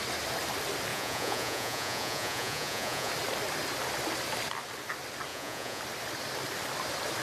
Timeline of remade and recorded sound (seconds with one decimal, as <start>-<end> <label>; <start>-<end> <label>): 0.0-0.9 recorded; 0.9-3.1 remade; 3.1-5.3 recorded; 5.3-5.8 remade; 5.8-7.2 recorded